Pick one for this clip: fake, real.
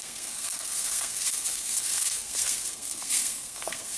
fake